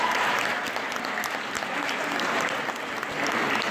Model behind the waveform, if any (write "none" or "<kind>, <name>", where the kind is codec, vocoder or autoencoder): none